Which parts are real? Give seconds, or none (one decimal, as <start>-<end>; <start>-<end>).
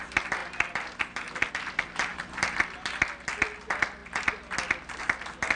0.0-2.1; 2.6-5.6